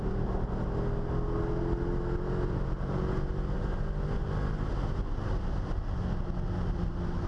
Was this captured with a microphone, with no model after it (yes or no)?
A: yes